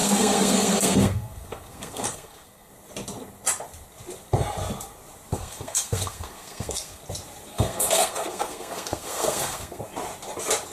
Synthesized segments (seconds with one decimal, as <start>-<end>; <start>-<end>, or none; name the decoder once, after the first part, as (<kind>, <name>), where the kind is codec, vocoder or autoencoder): 0.0-2.7 (codec, SNAC); 5.3-7.0; 7.5-9.8